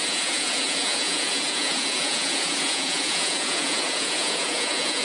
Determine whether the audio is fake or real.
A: fake